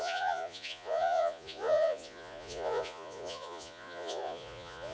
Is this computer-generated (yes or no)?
yes